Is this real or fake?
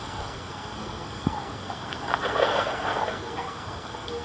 fake